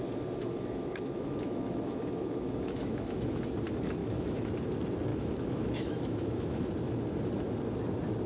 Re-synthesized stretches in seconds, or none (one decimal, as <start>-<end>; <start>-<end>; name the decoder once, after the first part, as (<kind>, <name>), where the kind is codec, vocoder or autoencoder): 0.4-3.4 (autoencoder, DAC-VAE); 4.0-4.5; 5.1-6.6